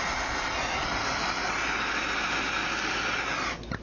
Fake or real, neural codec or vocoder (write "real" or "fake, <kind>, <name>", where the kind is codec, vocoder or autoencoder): real